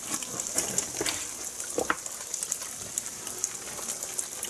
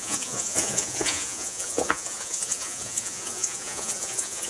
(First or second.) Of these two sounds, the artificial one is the second